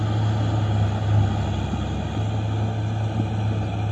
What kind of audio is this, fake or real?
real